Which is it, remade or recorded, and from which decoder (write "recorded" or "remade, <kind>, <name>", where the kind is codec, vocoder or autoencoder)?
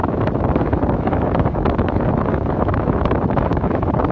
remade, autoencoder, DAC-VAE